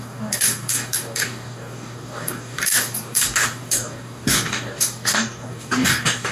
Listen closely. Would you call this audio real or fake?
fake